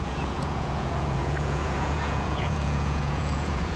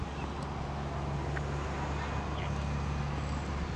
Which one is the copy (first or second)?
first